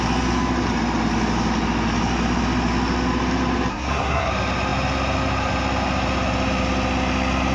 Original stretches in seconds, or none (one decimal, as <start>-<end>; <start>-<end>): 0.0-3.7; 4.3-7.5